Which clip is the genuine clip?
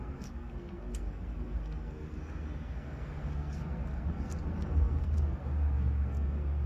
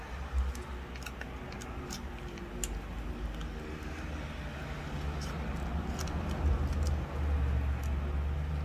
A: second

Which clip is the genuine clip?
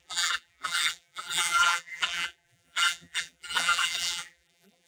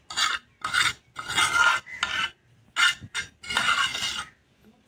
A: second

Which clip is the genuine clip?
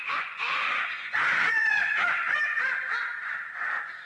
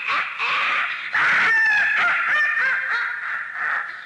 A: second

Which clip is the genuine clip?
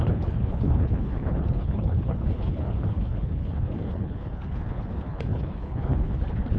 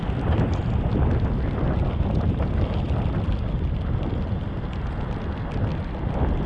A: second